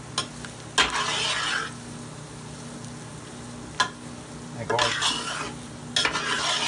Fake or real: real